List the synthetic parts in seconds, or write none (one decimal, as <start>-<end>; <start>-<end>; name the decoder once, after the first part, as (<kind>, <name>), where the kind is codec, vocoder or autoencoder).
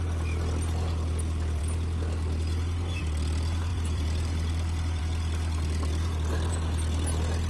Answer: 3.7-5.0 (vocoder, BigVGAN v2)